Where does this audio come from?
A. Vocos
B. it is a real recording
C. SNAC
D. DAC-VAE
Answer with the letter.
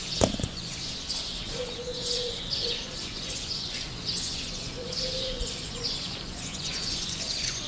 A